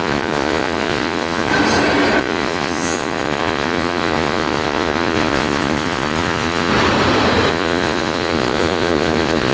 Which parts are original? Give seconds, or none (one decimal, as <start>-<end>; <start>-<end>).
1.5-2.2; 6.7-7.5